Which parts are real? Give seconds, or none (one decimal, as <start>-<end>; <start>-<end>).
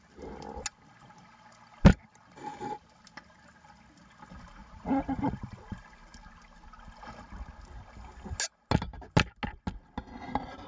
0.0-4.6; 5.3-10.7